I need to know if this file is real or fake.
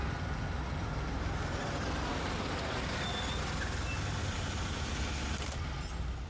real